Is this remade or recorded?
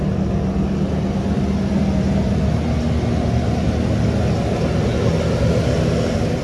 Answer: recorded